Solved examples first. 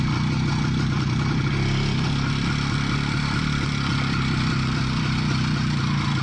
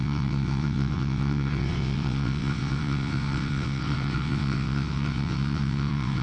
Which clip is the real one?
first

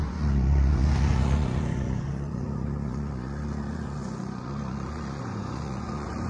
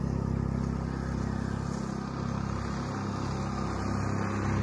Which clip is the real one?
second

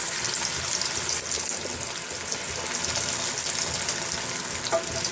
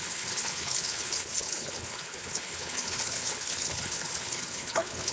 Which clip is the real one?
first